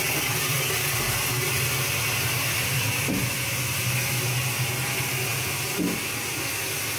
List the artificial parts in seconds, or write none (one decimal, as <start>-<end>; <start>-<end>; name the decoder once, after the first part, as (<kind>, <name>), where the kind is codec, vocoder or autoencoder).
none